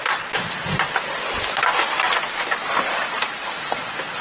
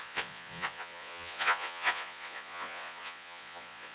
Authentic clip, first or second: first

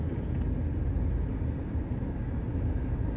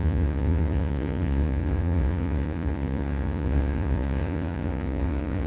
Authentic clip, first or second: first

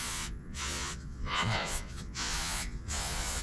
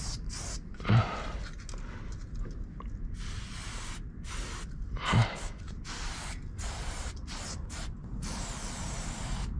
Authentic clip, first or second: second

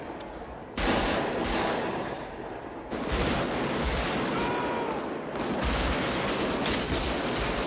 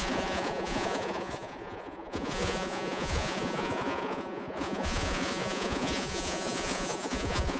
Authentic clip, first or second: first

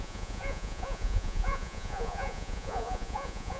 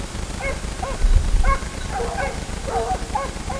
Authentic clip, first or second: second